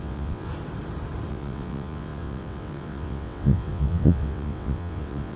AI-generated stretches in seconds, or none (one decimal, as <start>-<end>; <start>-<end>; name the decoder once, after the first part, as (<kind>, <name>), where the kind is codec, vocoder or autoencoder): 0.0-0.5 (vocoder, WaveNeXt); 1.3-5.4

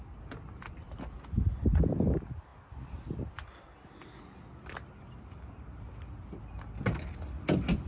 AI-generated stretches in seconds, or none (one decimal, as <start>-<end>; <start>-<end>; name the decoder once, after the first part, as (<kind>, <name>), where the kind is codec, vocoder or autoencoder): none